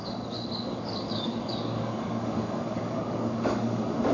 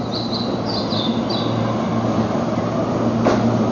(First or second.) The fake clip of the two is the first